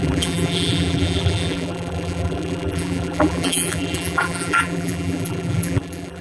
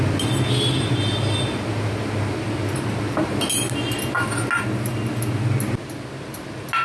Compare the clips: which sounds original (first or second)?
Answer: second